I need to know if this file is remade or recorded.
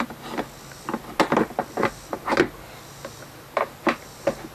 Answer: recorded